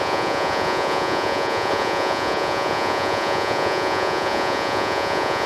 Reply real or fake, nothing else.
fake